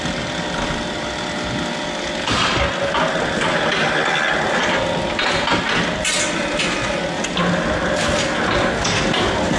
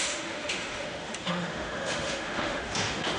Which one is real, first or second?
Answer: first